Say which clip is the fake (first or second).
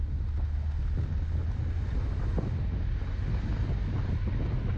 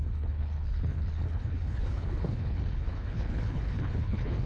second